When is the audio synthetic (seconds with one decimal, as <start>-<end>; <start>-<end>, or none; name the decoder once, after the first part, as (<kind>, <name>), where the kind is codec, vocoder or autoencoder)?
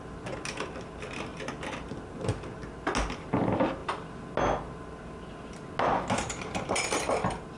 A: none